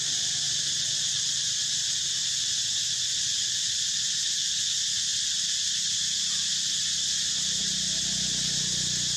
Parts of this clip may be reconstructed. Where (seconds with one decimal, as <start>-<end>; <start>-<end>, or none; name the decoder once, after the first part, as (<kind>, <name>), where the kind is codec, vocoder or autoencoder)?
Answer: 5.1-6.5 (vocoder, BigVGAN v2)